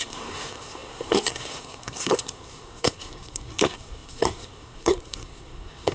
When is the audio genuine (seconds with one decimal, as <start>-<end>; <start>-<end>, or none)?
none